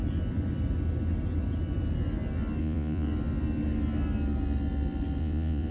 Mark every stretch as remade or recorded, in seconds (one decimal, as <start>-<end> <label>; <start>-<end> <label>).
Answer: 0.0-2.6 recorded; 2.6-3.1 remade; 3.1-5.2 recorded; 5.2-5.7 remade